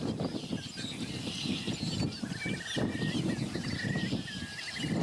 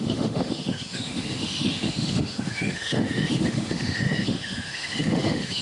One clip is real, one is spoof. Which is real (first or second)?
first